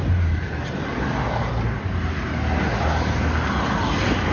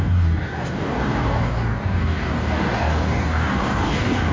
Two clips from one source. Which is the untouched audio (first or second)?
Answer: first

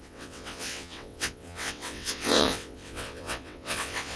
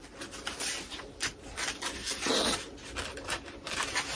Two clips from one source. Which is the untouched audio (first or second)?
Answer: second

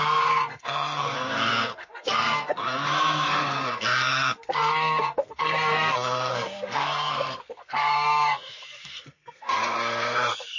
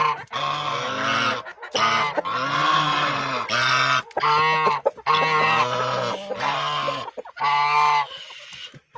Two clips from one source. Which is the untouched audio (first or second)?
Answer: second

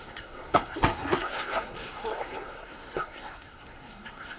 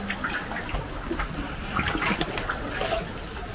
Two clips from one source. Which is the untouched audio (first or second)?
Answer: second